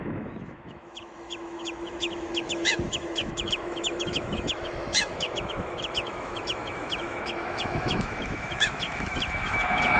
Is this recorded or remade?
remade